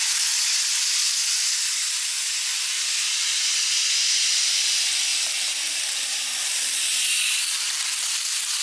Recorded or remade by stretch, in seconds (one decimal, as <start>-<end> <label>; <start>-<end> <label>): 0.0-5.1 recorded; 5.1-7.4 remade; 7.4-8.6 recorded